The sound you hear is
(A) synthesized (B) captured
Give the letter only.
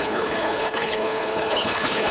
A